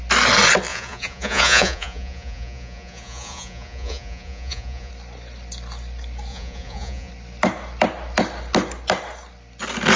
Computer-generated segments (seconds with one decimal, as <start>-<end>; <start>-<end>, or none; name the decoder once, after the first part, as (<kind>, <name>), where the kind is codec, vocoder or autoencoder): 0.7-4.9 (vocoder, Vocos); 6.3-7.1